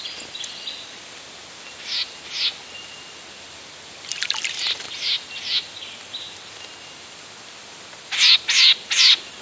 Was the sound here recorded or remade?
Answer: recorded